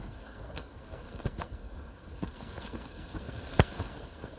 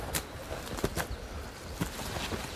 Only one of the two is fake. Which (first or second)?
first